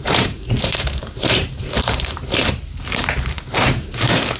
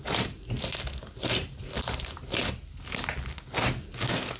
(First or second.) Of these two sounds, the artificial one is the first